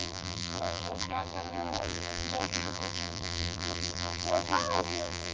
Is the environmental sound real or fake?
fake